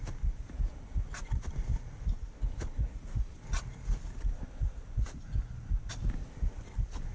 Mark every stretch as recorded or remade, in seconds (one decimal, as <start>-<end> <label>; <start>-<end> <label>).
0.0-7.1 recorded